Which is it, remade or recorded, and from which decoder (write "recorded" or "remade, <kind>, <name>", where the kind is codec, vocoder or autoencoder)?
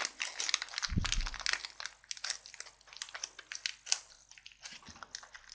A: recorded